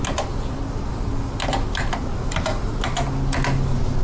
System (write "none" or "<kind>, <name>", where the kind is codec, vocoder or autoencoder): none